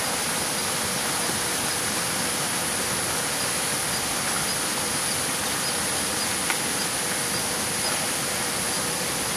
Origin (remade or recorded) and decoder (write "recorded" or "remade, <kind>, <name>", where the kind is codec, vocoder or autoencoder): recorded